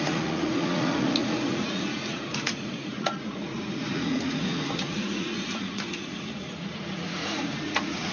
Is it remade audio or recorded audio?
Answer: remade